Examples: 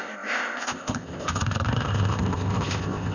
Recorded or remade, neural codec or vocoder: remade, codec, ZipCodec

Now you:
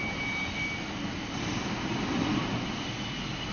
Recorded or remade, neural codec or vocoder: recorded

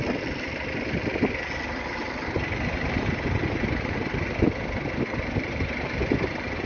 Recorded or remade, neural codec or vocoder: recorded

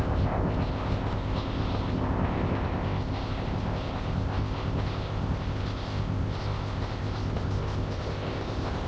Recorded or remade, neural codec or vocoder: remade, codec, ZipCodec